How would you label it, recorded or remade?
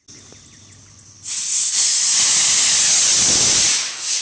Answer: recorded